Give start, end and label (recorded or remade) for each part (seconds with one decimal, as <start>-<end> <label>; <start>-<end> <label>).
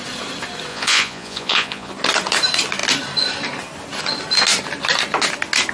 0.0-0.7 recorded; 0.7-1.9 remade; 1.9-5.7 recorded